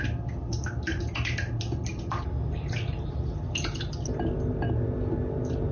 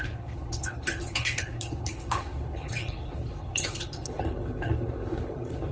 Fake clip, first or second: second